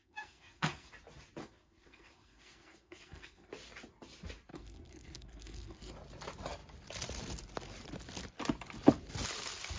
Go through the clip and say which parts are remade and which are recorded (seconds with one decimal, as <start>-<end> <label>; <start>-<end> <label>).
0.0-0.9 remade; 0.9-1.4 recorded; 1.4-3.5 remade; 3.5-4.5 recorded; 4.5-5.9 remade; 5.9-9.8 recorded